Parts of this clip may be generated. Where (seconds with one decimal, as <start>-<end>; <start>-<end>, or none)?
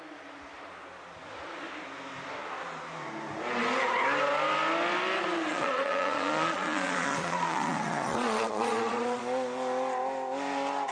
5.5-9.2